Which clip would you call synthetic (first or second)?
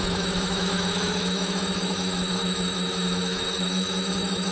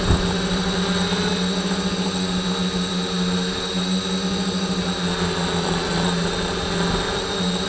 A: first